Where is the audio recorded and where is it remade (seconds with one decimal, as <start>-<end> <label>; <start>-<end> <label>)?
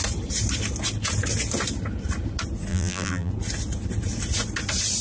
0.0-2.7 recorded; 2.7-3.3 remade; 3.3-5.0 recorded